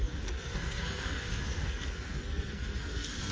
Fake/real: fake